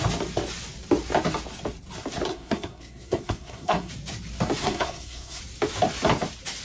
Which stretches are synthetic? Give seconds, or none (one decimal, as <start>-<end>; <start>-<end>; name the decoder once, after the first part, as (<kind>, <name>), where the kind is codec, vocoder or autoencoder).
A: 2.3-3.9 (codec, SNAC); 4.6-5.4